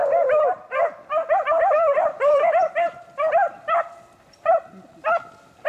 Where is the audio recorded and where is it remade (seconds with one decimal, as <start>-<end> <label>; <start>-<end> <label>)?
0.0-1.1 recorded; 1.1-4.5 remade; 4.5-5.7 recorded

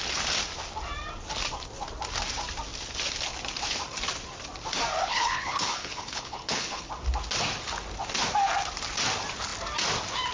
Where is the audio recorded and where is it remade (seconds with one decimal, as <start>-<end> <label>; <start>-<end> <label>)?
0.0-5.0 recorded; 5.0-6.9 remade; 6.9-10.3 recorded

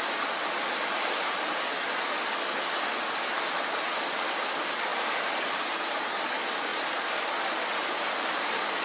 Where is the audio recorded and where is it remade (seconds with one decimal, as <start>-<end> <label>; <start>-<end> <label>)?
0.0-8.8 recorded

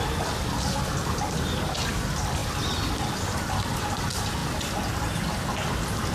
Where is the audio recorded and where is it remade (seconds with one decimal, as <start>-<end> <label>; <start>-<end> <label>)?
0.0-6.1 recorded

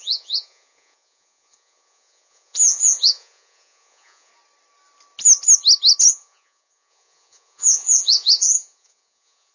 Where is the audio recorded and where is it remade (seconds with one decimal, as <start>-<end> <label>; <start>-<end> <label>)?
0.0-4.3 remade; 4.3-6.1 recorded; 6.1-9.5 remade

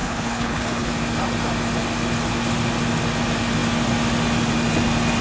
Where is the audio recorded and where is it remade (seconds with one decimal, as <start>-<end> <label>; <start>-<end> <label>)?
0.0-0.9 remade; 0.9-5.2 recorded

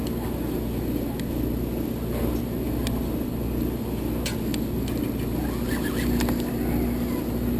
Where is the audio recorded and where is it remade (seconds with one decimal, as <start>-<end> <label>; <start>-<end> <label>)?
0.0-7.6 recorded